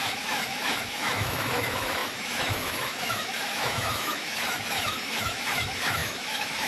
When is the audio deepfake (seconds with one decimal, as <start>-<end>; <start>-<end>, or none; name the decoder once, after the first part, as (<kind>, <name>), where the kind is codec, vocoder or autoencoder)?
0.0-6.7 (autoencoder, DAC-VAE)